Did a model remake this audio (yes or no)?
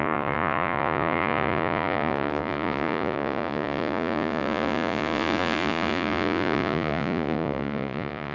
yes